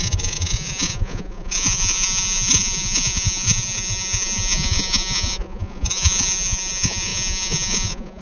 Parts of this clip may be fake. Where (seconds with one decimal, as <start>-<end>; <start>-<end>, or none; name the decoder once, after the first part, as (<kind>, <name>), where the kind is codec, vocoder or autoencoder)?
0.0-8.2 (vocoder, Vocos)